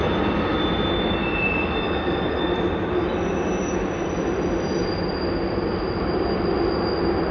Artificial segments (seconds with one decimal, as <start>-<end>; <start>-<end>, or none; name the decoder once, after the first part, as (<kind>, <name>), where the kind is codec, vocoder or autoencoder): none